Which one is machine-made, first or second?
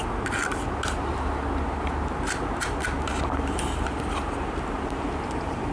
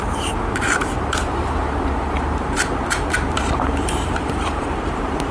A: second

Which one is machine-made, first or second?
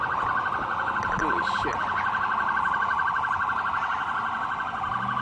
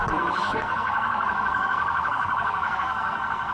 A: second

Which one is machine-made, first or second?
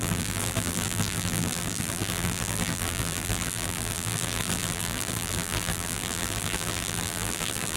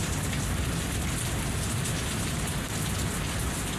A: first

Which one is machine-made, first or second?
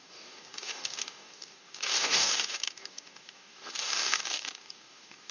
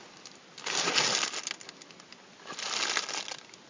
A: first